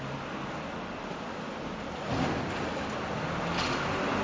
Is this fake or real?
real